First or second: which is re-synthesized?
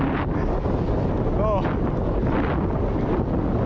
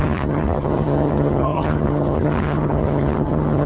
second